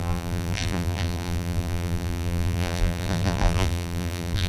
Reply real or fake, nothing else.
fake